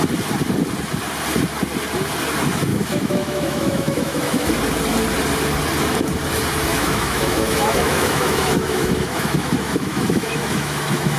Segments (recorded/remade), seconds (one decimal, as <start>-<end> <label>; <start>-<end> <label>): 0.0-2.7 recorded; 2.7-4.5 remade; 4.5-6.7 recorded; 6.7-11.2 remade